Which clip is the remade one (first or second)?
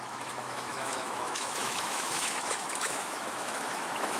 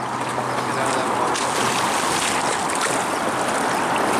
first